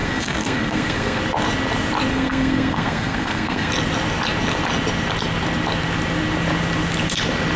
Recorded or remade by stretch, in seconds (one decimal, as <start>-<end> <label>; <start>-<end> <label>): 0.0-1.2 remade; 1.2-2.1 recorded; 2.1-3.7 remade; 3.7-7.6 recorded